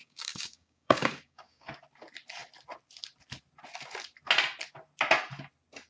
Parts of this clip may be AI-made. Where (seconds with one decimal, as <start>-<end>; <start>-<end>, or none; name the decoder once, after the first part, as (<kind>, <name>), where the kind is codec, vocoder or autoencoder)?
0.0-1.7 (codec, DAC)